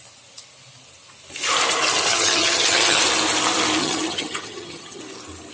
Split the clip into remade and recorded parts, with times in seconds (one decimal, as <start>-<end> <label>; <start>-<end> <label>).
0.0-2.1 recorded; 2.1-3.0 remade; 3.0-3.8 recorded; 3.8-5.0 remade; 5.0-5.5 recorded